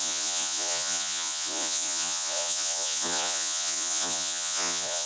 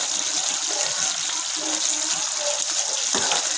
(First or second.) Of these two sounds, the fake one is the first